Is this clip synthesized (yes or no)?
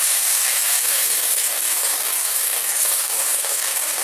yes